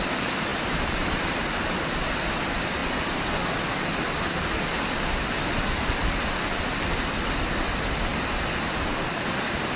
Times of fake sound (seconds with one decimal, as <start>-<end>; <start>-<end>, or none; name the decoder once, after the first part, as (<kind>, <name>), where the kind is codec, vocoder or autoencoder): 8.1-8.8 (vocoder, BigVGAN v2)